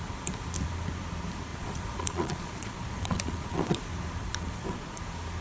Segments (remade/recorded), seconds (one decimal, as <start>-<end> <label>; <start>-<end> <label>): 0.0-1.5 recorded; 1.5-3.8 remade; 3.8-4.2 recorded; 4.2-5.0 remade; 5.0-5.4 recorded